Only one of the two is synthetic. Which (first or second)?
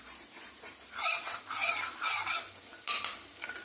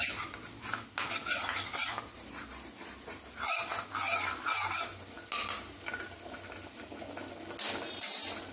first